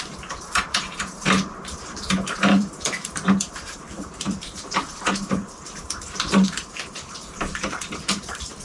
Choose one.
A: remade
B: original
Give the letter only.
A